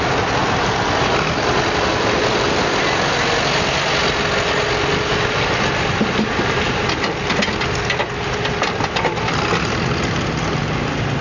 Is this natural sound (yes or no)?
yes